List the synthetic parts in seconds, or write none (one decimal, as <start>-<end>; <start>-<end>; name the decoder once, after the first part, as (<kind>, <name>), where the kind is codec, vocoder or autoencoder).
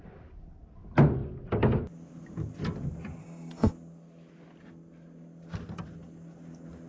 3.2-3.7 (codec, DAC)